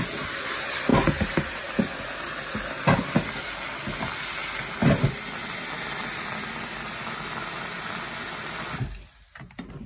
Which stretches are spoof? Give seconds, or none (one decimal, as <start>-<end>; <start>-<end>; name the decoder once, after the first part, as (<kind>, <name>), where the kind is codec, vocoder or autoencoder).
none